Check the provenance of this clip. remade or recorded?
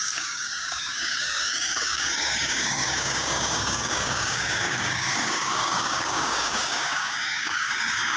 remade